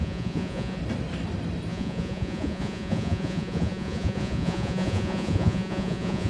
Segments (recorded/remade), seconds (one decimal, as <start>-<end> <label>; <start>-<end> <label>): 0.0-0.8 remade; 0.8-1.7 recorded; 1.7-6.3 remade